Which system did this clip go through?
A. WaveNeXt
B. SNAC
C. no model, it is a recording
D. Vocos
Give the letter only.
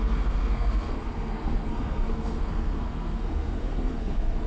B